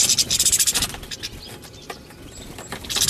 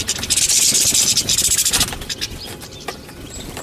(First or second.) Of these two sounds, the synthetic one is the second